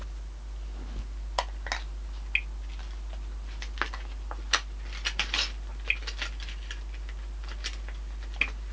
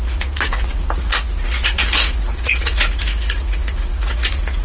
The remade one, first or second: second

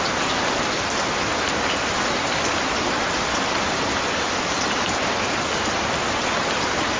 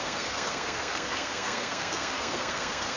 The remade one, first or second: second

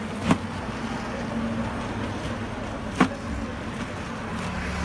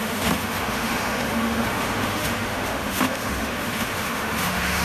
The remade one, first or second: second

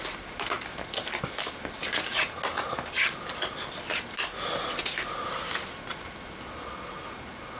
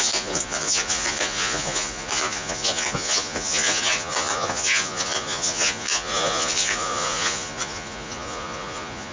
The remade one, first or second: second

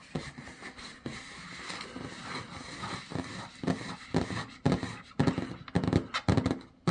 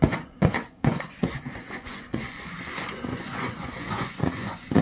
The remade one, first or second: second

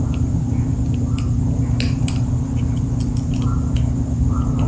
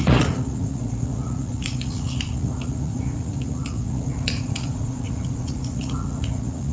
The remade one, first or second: second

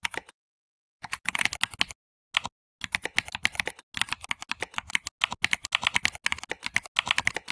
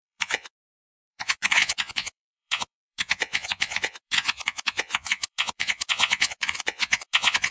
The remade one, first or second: second